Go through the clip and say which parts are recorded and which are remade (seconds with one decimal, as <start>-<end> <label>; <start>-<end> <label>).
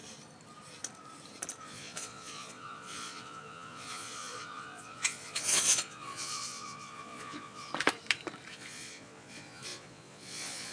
0.0-1.6 recorded; 1.6-7.7 remade; 7.7-8.5 recorded; 8.5-10.7 remade